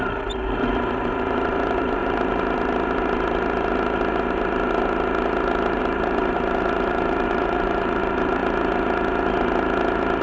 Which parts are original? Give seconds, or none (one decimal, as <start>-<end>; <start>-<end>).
2.0-5.8; 8.4-10.2